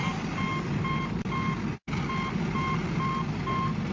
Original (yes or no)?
yes